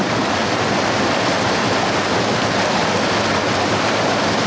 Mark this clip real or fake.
real